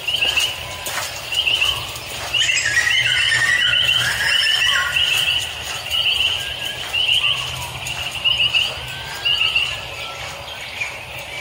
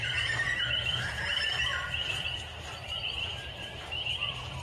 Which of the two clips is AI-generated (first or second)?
second